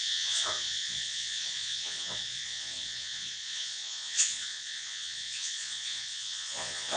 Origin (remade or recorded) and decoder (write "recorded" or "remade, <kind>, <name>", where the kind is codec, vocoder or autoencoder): remade, vocoder, Vocos